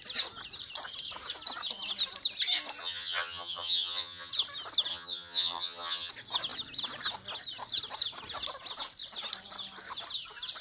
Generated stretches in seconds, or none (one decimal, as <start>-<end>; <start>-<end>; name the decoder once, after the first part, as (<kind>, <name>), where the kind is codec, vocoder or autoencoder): 2.8-4.3 (vocoder, HiFi-GAN); 4.9-6.1